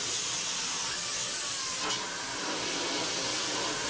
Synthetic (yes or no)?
no